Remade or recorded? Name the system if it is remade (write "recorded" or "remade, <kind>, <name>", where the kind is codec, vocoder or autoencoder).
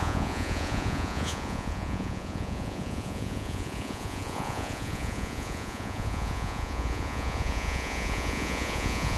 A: remade, vocoder, Vocos